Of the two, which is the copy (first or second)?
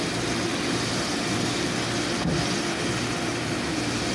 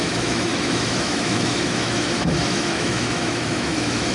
second